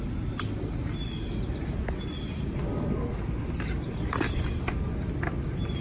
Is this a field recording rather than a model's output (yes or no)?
yes